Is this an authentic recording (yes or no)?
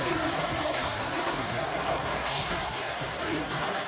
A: no